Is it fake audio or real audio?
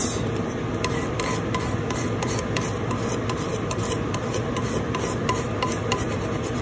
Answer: real